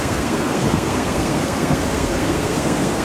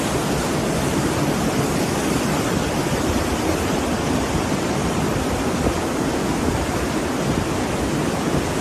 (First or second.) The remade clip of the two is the first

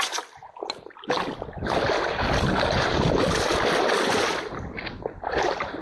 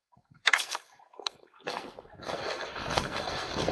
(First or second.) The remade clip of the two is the second